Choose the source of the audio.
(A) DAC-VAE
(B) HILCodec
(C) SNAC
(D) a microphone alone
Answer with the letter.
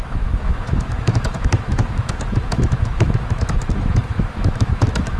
A